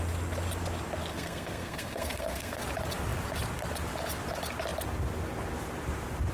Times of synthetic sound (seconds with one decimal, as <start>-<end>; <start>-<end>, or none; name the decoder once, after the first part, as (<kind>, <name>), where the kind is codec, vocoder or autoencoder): 1.1-2.6 (codec, SNAC)